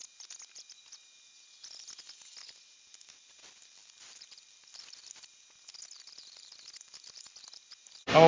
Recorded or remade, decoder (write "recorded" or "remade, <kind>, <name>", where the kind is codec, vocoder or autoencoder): recorded